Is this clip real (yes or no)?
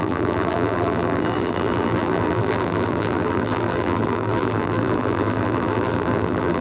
no